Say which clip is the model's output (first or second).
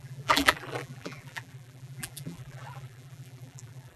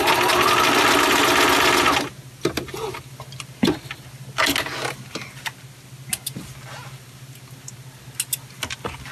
first